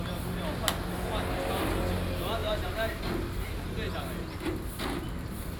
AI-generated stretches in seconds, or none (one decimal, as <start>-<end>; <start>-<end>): 2.4-3.1